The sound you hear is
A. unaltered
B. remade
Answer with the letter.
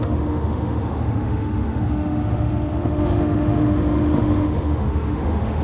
B